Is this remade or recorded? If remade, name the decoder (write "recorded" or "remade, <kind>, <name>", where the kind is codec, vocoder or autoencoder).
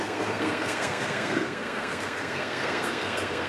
remade, codec, SNAC